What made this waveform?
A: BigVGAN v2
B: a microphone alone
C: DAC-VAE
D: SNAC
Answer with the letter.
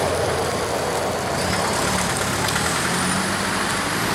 A